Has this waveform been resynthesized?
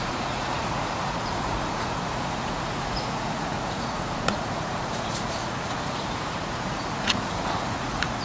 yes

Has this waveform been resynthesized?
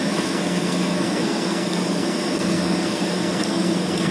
yes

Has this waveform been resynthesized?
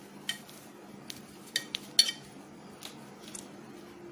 no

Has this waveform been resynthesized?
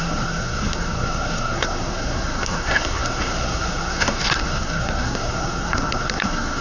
yes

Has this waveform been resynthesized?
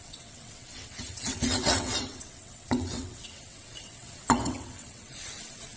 yes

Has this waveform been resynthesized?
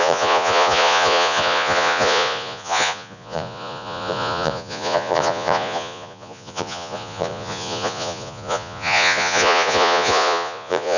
yes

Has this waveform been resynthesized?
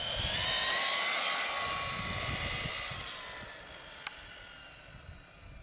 no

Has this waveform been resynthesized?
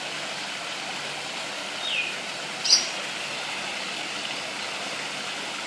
no